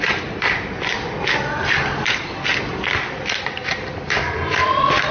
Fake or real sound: real